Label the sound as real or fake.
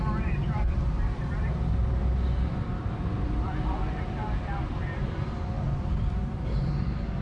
fake